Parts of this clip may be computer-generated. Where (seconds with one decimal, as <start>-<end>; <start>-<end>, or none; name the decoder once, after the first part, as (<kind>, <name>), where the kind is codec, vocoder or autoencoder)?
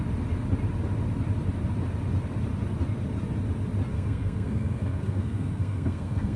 3.9-6.4 (codec, SNAC)